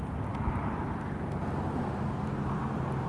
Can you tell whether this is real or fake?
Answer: real